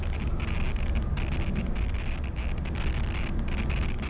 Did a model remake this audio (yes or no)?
no